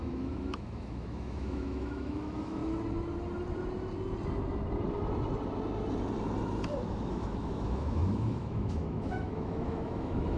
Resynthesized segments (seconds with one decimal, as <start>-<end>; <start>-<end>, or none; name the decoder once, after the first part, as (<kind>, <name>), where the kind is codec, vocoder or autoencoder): 0.0-2.6 (autoencoder, DAC-VAE); 6.9-10.4